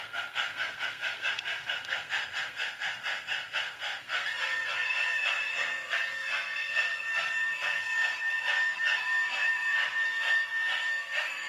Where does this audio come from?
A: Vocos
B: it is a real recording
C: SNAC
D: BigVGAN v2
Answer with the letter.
C